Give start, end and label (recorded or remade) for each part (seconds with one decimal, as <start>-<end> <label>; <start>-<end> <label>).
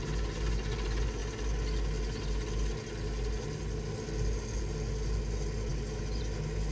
0.0-6.7 recorded